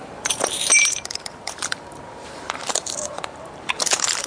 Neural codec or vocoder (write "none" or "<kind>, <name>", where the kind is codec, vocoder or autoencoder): vocoder, BigVGAN v2